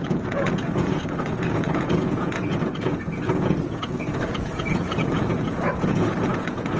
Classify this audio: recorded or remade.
remade